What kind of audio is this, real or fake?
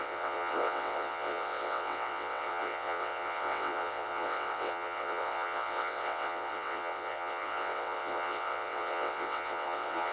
fake